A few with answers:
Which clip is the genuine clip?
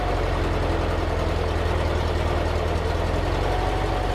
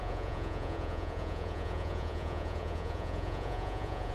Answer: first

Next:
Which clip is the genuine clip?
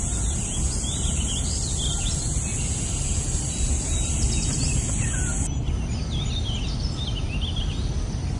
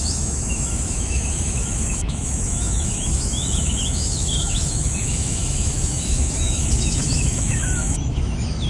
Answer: first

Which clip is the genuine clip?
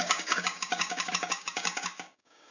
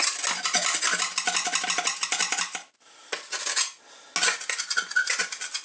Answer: second